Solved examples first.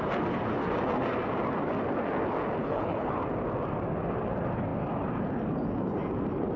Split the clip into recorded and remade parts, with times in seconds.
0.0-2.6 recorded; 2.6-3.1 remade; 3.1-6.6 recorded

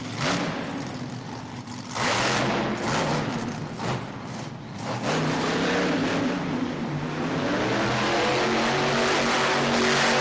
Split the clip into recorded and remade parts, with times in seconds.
0.0-10.2 recorded

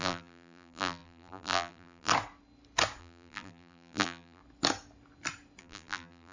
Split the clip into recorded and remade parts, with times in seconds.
0.0-2.1 remade; 2.1-3.0 recorded; 3.0-4.4 remade; 4.4-5.6 recorded; 5.6-6.3 remade

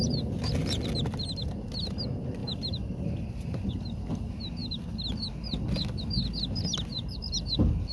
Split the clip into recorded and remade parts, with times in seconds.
0.0-2.4 recorded; 2.4-3.7 remade; 3.7-7.9 recorded

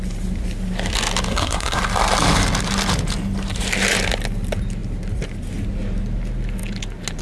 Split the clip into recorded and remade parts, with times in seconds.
0.0-1.3 recorded; 1.3-1.8 remade; 1.8-7.2 recorded

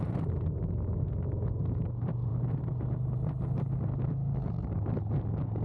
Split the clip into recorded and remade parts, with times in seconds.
0.0-5.6 recorded